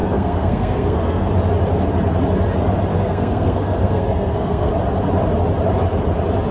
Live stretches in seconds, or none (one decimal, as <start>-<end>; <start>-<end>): 1.3-2.9; 4.7-6.5